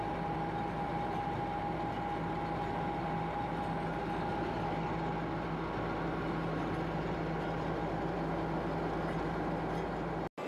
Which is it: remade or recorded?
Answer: recorded